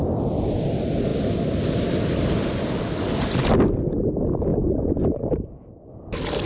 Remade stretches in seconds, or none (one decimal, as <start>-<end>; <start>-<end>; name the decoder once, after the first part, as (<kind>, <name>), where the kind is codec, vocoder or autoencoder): none